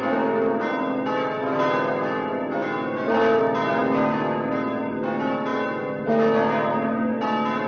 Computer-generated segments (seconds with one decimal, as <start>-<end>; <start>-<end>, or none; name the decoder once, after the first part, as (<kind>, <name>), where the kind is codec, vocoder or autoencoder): none